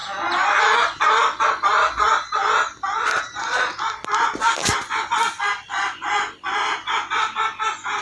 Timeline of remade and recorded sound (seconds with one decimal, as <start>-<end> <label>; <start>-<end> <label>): 0.0-8.0 recorded